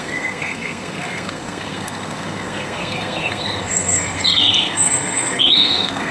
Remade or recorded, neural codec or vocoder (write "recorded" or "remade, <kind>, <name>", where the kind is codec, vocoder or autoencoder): remade, codec, SNAC